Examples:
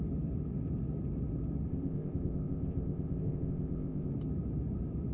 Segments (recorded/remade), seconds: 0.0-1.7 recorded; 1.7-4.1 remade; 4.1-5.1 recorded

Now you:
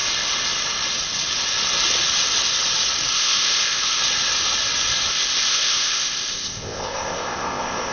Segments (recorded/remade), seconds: 0.0-3.1 recorded; 3.1-4.0 remade; 4.0-5.1 recorded; 5.1-7.9 remade

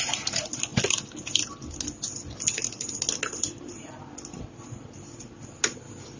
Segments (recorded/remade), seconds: 0.0-6.2 recorded

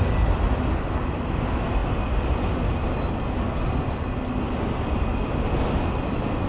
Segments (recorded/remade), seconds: 0.0-6.5 recorded

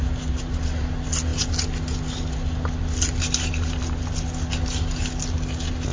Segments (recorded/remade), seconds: 0.0-5.9 recorded